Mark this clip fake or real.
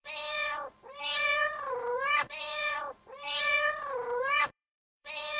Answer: fake